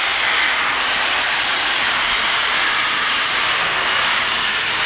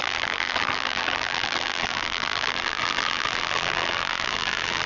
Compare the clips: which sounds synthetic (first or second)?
second